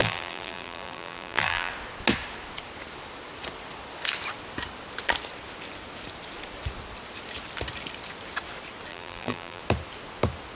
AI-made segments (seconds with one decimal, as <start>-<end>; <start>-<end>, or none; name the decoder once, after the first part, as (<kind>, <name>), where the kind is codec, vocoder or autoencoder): 0.0-1.7 (vocoder, BigVGAN v2); 8.9-9.6